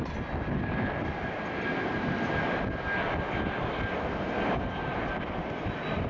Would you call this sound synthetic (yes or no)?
no